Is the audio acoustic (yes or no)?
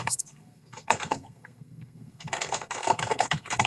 no